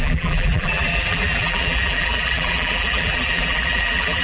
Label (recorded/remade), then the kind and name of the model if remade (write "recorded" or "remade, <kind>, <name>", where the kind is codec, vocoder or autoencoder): remade, vocoder, BigVGAN v2